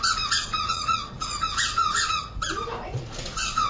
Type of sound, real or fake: fake